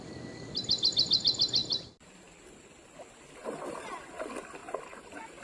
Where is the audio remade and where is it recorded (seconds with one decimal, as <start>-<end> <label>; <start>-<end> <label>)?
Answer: 0.0-3.4 recorded; 3.4-4.1 remade; 4.1-4.6 recorded; 4.6-5.4 remade